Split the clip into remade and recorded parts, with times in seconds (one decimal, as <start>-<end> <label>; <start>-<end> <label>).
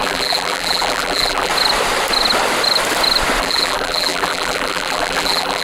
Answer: 0.0-1.5 remade; 1.5-3.4 recorded; 3.4-5.6 remade